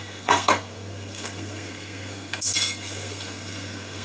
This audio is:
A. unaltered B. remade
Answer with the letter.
B